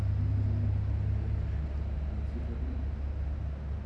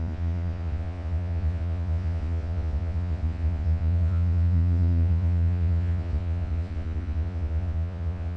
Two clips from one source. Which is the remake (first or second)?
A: second